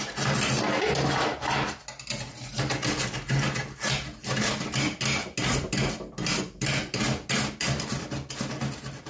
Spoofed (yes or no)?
no